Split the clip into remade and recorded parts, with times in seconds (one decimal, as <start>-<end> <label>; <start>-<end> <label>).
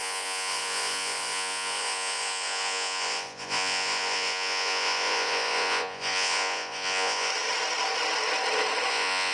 0.0-7.3 remade; 7.3-8.9 recorded; 8.9-9.3 remade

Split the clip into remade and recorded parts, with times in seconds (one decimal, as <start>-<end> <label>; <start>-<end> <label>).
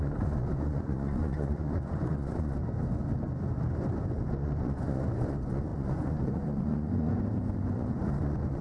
0.0-2.6 remade; 2.6-4.3 recorded; 4.3-8.6 remade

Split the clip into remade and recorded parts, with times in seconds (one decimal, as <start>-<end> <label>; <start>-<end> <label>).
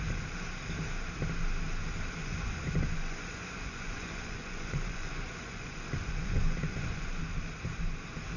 0.0-2.2 recorded; 2.2-7.2 remade; 7.2-8.4 recorded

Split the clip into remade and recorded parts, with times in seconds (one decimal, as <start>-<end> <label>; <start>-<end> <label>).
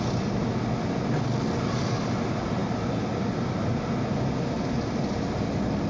0.0-5.9 recorded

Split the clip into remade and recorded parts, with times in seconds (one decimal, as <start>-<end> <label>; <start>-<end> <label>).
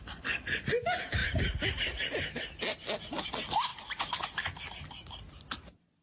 0.0-6.0 recorded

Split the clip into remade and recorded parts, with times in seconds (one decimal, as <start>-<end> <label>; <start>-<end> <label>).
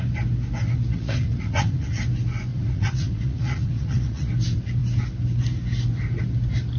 0.0-0.9 recorded; 0.9-2.0 remade; 2.0-2.5 recorded; 2.5-4.3 remade; 4.3-6.8 recorded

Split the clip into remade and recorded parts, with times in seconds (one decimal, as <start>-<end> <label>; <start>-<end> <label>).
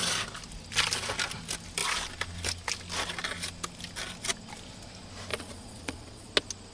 0.0-5.3 recorded; 5.3-6.3 remade; 6.3-6.7 recorded